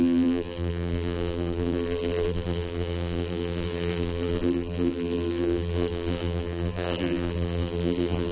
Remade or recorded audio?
remade